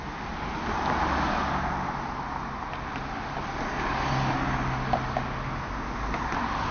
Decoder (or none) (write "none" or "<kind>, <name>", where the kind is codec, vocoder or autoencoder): none